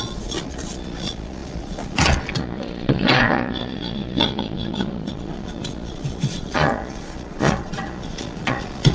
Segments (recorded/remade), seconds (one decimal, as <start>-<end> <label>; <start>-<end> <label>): 0.0-8.9 remade

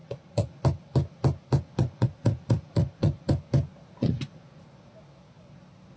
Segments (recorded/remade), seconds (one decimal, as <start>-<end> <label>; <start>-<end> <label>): 0.0-0.6 remade; 0.6-1.8 recorded; 1.8-3.3 remade; 3.3-4.0 recorded; 4.0-4.6 remade; 4.6-6.0 recorded

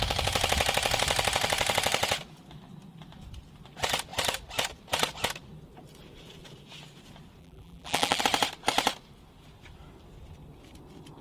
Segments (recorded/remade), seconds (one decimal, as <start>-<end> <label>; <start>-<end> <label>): 0.0-7.4 recorded; 7.4-8.2 remade; 8.2-11.2 recorded